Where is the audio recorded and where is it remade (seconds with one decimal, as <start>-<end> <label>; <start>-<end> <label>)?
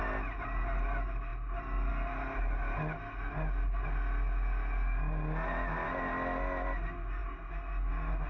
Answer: 0.0-8.3 recorded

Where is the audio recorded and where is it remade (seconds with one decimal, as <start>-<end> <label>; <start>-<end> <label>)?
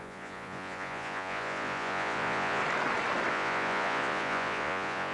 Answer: 0.0-2.6 remade; 2.6-3.3 recorded; 3.3-5.1 remade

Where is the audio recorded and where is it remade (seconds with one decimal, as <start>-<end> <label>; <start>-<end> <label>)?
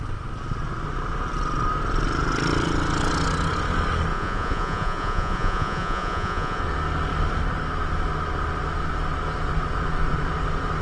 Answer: 0.0-4.1 recorded; 4.1-6.6 remade; 6.6-10.8 recorded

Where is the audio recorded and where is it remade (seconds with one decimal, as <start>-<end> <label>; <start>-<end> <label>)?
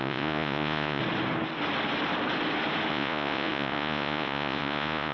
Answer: 0.0-1.0 remade; 1.0-2.9 recorded; 2.9-5.1 remade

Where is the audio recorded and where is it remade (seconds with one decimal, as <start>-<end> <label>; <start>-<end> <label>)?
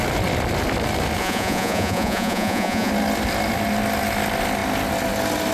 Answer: 0.0-1.2 recorded; 1.2-2.9 remade; 2.9-5.5 recorded